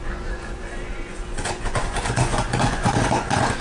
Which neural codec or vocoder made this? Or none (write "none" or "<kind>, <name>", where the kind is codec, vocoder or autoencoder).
vocoder, Vocos